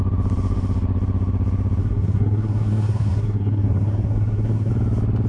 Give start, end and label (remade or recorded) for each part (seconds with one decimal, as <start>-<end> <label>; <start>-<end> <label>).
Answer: 0.0-1.8 recorded; 1.8-4.7 remade; 4.7-5.3 recorded